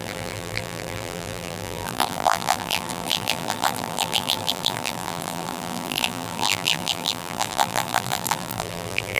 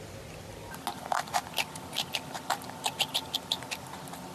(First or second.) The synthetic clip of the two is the first